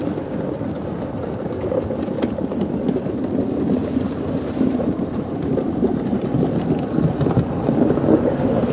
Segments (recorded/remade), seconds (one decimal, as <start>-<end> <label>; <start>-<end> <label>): 0.0-3.8 recorded; 3.8-6.3 remade; 6.3-8.7 recorded